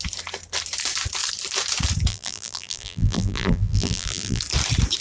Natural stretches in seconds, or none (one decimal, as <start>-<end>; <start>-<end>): 0.0-2.1; 4.4-5.0